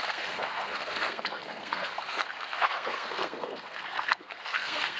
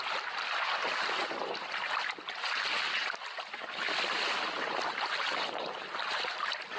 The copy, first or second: first